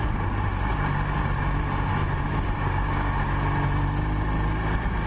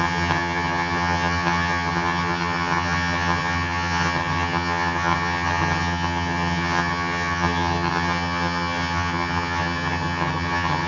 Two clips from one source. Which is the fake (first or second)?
second